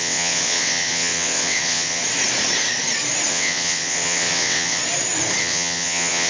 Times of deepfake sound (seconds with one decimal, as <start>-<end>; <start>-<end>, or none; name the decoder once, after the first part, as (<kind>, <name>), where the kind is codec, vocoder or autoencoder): 0.0-2.0 (vocoder, WaveNeXt); 3.3-4.8; 5.4-6.3